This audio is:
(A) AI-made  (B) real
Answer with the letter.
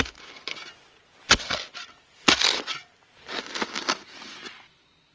B